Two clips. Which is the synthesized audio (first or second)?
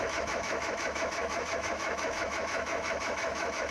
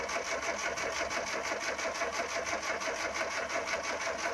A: first